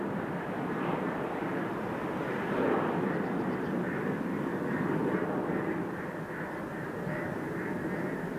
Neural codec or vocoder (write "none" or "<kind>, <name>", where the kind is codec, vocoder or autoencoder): vocoder, BigVGAN v2